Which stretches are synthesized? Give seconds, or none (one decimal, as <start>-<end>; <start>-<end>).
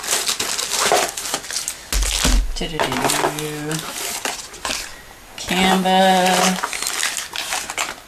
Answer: none